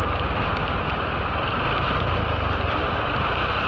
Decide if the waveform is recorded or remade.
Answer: recorded